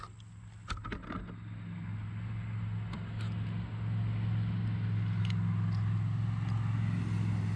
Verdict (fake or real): real